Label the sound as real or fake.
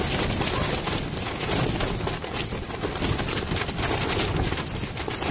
real